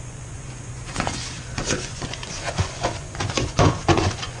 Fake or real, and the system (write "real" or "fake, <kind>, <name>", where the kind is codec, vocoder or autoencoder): fake, vocoder, Vocos